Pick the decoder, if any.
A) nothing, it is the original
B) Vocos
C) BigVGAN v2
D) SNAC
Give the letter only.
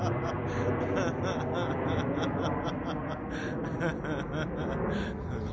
A